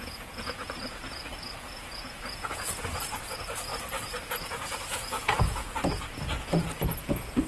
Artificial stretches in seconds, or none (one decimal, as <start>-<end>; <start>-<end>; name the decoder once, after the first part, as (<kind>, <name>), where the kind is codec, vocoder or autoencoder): 0.0-3.7 (vocoder, Vocos); 4.2-7.5